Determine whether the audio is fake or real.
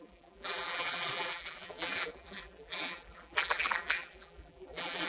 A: fake